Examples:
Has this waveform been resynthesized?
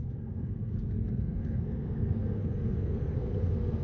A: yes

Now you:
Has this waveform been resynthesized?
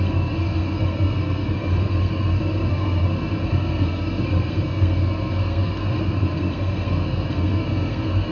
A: yes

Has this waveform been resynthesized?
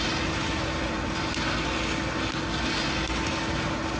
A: no